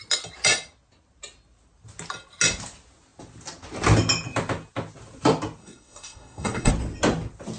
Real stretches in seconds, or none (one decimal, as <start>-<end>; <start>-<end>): 0.0-5.6; 6.7-7.6